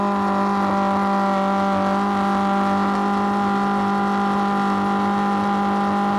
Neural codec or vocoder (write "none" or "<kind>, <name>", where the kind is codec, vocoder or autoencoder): none